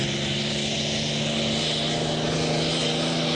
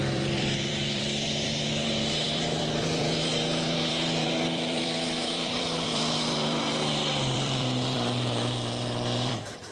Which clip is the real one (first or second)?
first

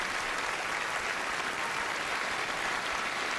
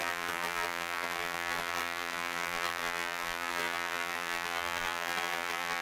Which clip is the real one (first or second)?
first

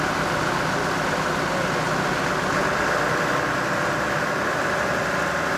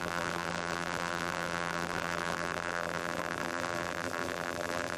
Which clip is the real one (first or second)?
first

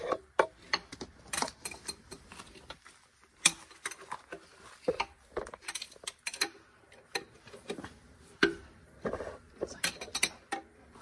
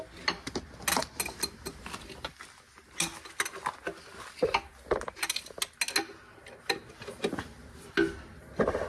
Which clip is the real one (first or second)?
second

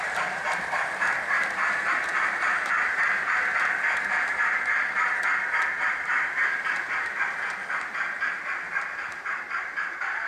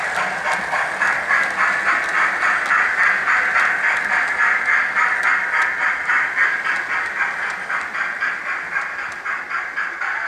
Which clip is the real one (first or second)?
second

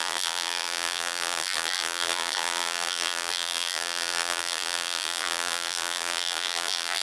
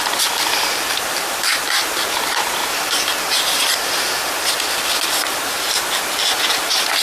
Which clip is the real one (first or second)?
second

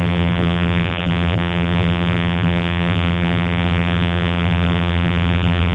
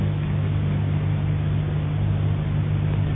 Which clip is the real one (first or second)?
second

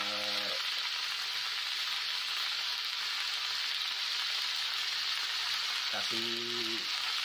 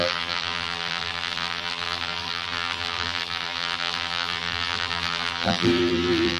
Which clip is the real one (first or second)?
first